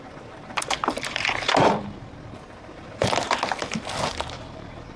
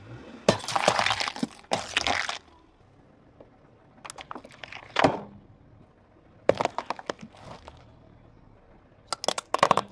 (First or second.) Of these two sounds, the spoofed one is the first